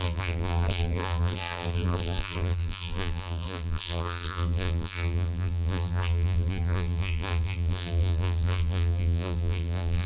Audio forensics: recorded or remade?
remade